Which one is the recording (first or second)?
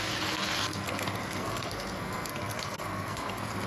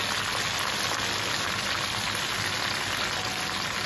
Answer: second